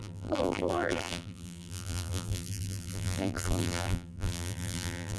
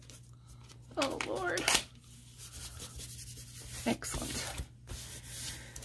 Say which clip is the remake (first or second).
first